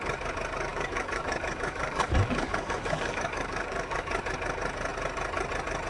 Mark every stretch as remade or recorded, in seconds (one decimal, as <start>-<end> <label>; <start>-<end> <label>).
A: 0.0-0.7 recorded; 0.7-4.2 remade; 4.2-5.9 recorded

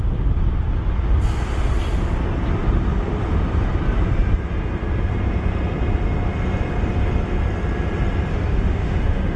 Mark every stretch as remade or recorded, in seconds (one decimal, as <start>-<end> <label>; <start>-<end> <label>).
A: 0.0-8.3 recorded; 8.3-9.4 remade

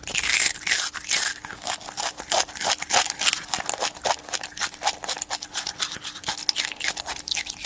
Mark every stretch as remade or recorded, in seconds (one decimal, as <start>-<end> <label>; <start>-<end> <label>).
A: 0.0-7.7 recorded

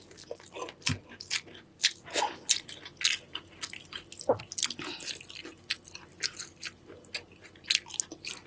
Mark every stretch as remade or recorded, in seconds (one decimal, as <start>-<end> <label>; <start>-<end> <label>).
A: 0.0-8.5 recorded

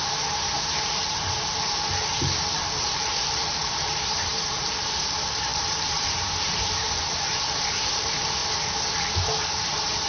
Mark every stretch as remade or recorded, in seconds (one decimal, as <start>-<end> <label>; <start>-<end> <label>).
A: 0.0-8.4 remade; 8.4-8.9 recorded; 8.9-10.1 remade

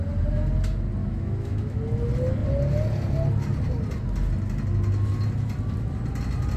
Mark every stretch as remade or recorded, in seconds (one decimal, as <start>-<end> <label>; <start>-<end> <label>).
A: 0.0-1.0 recorded; 1.0-1.8 remade; 1.8-6.6 recorded

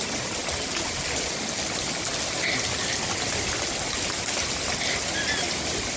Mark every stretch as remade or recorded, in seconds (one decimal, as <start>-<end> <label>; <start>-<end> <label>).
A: 0.0-0.4 recorded; 0.4-1.0 remade; 1.0-6.0 recorded